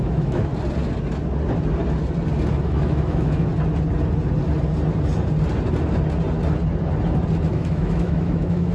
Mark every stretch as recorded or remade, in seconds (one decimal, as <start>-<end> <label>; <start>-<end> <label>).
0.0-0.5 remade; 0.5-2.6 recorded; 2.6-3.5 remade; 3.5-7.5 recorded; 7.5-8.7 remade